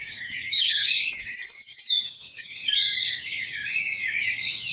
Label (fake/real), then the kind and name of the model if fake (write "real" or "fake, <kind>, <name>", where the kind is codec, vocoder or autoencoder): fake, codec, DAC